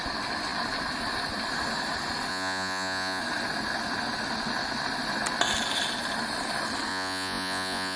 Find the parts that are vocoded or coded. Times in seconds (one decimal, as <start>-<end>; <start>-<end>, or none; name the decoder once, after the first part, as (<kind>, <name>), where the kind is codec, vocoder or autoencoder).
2.3-3.2 (vocoder, Vocos); 6.9-8.0